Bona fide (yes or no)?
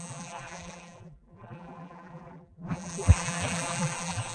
no